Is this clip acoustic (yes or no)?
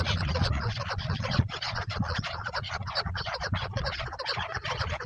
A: no